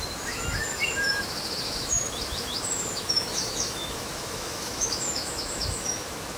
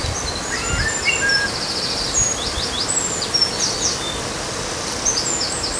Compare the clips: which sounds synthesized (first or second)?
first